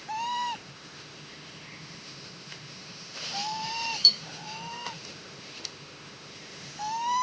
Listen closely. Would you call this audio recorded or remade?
remade